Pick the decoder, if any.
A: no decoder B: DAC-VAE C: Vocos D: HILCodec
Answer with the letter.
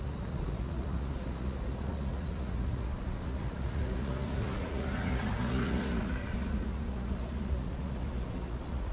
C